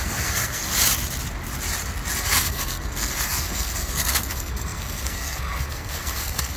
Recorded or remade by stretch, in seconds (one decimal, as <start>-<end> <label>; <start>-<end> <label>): 0.0-0.6 remade; 0.6-2.2 recorded; 2.2-6.6 remade